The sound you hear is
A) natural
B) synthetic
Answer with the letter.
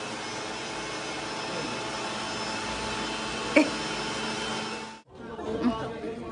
A